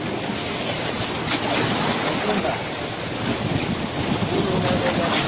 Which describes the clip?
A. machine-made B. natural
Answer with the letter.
B